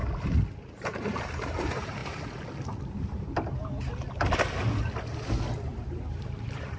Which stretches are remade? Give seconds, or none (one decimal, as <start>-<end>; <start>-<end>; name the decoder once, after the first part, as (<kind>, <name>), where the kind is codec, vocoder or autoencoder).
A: 0.8-2.0 (vocoder, BigVGAN v2); 5.6-6.8